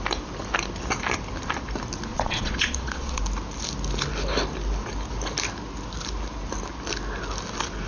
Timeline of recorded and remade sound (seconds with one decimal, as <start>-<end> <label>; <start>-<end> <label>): 0.0-2.1 recorded; 2.1-3.2 remade; 3.2-7.9 recorded

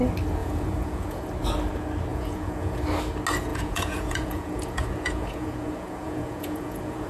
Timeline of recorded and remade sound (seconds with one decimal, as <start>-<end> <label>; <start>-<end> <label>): 0.0-0.4 recorded; 0.4-1.3 remade; 1.3-2.1 recorded; 2.1-2.8 remade; 2.8-3.5 recorded; 3.5-7.1 remade

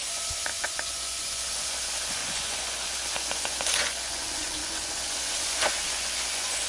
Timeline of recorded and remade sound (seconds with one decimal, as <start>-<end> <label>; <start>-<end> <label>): 0.0-6.7 remade

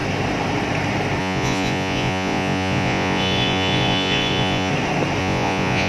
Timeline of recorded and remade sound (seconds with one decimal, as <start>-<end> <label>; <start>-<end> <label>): 0.0-1.2 recorded; 1.2-4.7 remade; 4.7-5.2 recorded; 5.2-5.9 remade

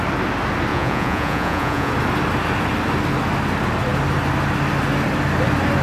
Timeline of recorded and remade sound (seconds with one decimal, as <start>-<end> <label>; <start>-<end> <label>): 0.0-0.7 recorded; 0.7-1.9 remade; 1.9-5.8 recorded